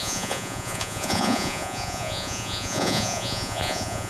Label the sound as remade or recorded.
remade